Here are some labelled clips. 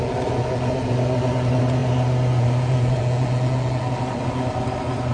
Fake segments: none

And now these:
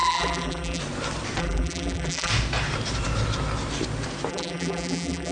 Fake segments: 0.0-0.8; 1.4-2.3; 4.3-5.3

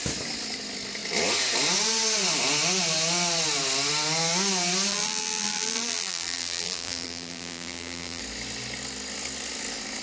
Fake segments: 4.9-8.2

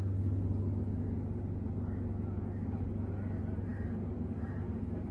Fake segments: none